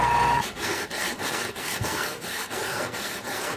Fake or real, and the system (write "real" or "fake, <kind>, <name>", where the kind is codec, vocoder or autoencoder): fake, codec, SNAC